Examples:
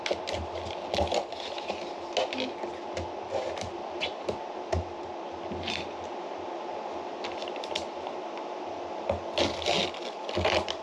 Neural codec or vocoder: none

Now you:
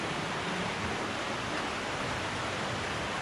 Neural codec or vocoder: none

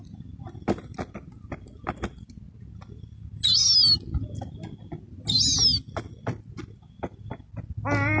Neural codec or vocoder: none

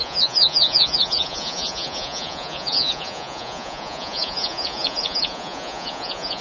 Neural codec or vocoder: vocoder, Vocos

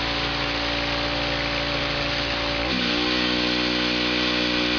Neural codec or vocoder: none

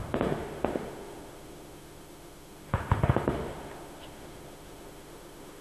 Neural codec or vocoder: autoencoder, DAC-VAE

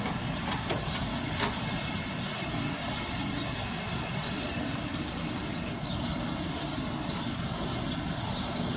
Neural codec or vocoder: none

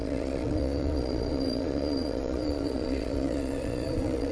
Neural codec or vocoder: vocoder, Vocos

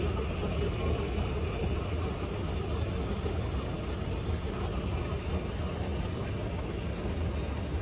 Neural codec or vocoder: none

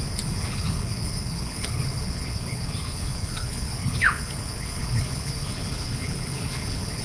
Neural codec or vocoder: codec, HILCodec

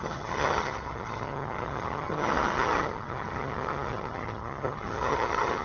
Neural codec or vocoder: vocoder, HiFi-GAN